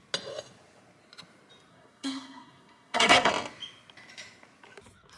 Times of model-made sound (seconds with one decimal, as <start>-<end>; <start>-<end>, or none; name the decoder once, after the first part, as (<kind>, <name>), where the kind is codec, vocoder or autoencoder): 1.7-3.3 (codec, SNAC)